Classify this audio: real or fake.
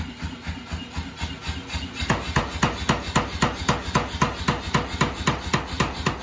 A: real